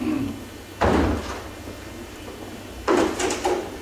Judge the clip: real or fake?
real